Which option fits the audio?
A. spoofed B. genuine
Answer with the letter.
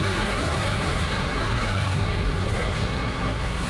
A